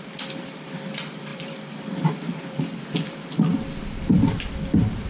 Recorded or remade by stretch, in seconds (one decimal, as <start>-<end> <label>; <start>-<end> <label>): 0.0-1.3 recorded; 1.3-4.4 remade; 4.4-5.1 recorded